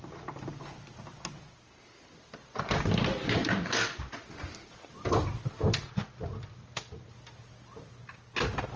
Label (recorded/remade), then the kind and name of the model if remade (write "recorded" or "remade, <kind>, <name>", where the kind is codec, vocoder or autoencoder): recorded